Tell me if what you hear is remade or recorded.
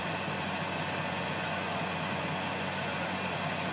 remade